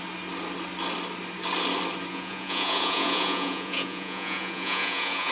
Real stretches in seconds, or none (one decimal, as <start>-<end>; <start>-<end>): 0.0-2.1